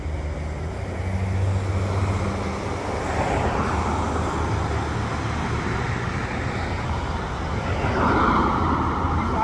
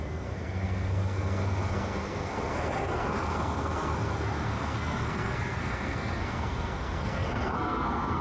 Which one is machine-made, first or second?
second